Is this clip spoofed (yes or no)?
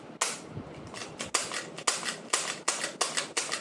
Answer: no